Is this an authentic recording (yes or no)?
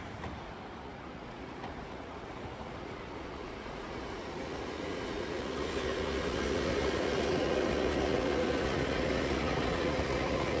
no